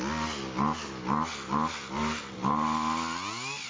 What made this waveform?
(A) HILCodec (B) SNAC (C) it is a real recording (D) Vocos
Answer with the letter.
C